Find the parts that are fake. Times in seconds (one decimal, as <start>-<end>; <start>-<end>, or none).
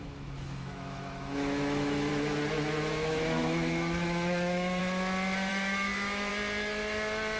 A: 0.0-2.1; 2.9-4.8; 5.5-6.3